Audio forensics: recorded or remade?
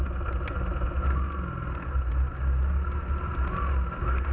recorded